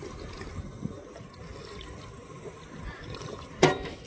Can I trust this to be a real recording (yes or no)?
yes